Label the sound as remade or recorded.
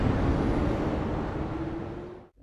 recorded